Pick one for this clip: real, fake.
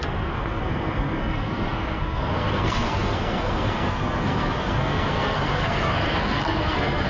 fake